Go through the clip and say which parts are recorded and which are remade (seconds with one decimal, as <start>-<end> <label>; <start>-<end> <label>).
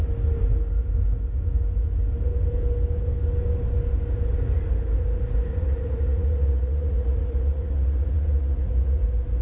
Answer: 0.0-5.5 recorded; 5.5-9.0 remade; 9.0-9.4 recorded